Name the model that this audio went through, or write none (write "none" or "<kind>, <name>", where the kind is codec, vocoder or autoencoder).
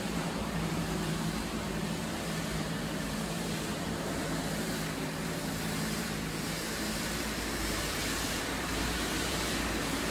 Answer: vocoder, BigVGAN v2